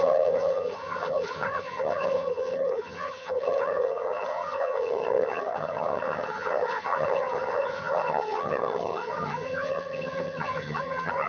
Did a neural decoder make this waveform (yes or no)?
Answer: yes